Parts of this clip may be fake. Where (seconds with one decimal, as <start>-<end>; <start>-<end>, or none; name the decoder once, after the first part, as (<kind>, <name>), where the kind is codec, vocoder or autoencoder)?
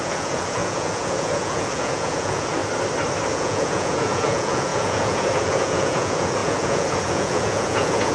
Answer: 0.0-2.6 (vocoder, Vocos); 3.3-8.1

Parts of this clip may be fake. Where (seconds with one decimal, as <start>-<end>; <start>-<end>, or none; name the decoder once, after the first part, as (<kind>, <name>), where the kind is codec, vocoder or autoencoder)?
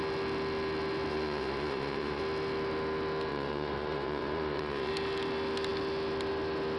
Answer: 1.1-2.2 (vocoder, Vocos); 3.3-4.9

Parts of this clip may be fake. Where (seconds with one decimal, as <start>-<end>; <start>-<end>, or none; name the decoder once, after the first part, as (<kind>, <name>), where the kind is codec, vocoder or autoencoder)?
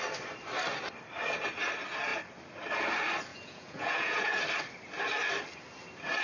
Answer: 3.3-4.4 (vocoder, Vocos)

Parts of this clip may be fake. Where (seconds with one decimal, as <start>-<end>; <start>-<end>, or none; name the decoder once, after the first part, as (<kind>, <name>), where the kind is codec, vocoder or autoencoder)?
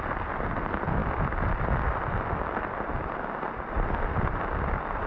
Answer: none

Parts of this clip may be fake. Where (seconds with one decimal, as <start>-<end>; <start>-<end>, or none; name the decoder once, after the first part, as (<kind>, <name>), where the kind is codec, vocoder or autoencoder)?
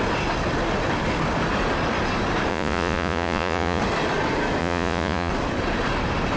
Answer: 2.5-3.8 (vocoder, Vocos); 4.6-5.3